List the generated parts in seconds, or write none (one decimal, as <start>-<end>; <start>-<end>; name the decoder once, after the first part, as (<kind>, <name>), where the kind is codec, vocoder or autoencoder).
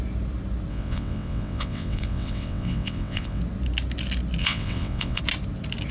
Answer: 0.7-3.4 (vocoder, WaveNeXt); 4.4-5.2